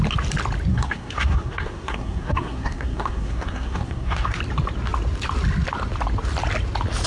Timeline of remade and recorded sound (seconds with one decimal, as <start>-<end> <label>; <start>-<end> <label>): 0.0-0.7 recorded; 0.7-4.4 remade; 4.4-7.1 recorded